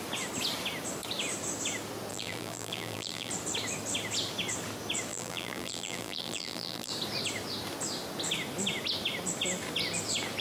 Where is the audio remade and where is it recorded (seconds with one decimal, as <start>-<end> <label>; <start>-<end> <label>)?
0.0-2.1 recorded; 2.1-3.3 remade; 3.3-5.1 recorded; 5.1-6.9 remade; 6.9-10.4 recorded